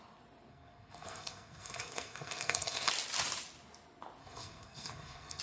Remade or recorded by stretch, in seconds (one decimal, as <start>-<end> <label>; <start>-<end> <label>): 0.0-0.5 recorded; 0.5-2.9 remade; 2.9-4.2 recorded; 4.2-5.4 remade